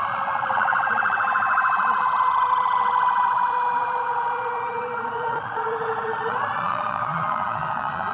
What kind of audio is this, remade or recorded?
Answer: remade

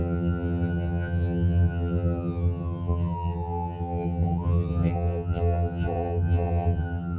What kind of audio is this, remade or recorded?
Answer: remade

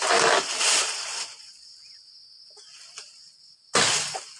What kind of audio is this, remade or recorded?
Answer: recorded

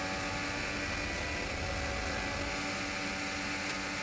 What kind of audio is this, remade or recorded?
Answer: recorded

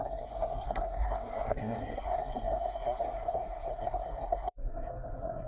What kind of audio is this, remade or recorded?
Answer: remade